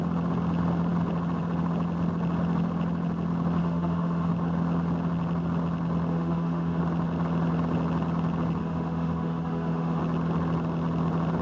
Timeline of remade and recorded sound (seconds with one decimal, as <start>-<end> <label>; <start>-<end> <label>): 0.0-3.6 recorded; 3.6-4.3 remade; 4.3-6.1 recorded; 6.1-6.8 remade; 6.8-8.6 recorded; 8.6-10.0 remade; 10.0-11.4 recorded